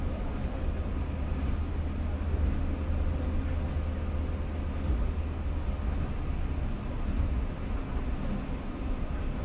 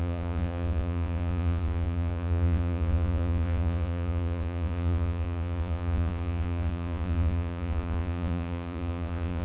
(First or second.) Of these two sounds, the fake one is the second